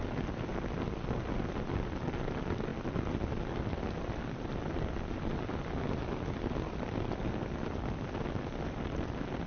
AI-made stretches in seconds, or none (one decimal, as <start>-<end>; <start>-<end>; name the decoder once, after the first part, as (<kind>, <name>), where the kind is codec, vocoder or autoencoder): none